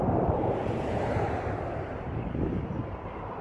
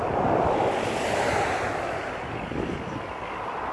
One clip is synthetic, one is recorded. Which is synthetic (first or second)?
first